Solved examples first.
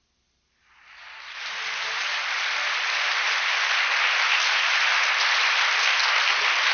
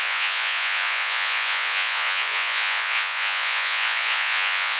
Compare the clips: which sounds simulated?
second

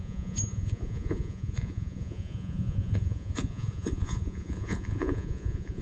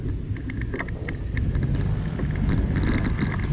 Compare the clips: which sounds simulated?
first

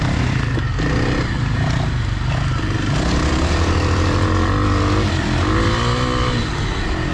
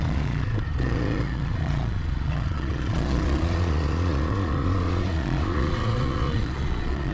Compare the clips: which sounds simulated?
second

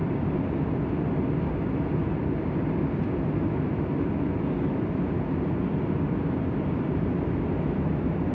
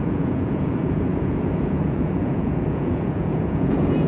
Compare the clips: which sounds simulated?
second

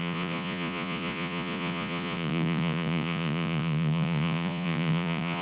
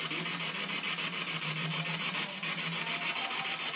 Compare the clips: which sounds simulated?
first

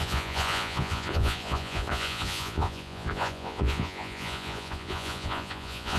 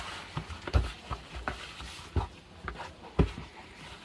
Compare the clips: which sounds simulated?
first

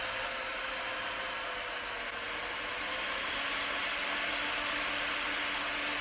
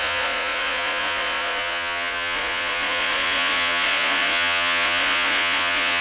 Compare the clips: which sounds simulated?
second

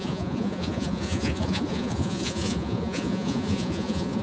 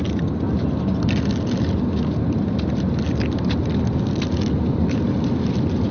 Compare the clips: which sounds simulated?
first